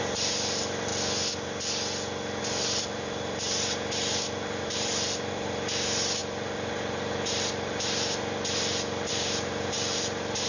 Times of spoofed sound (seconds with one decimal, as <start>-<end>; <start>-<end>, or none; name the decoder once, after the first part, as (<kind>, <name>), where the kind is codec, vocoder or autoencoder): 0.0-0.9 (vocoder, BigVGAN v2); 2.4-10.5